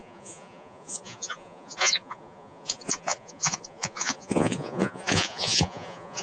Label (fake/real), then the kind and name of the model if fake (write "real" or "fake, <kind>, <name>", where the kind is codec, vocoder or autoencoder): fake, vocoder, Vocos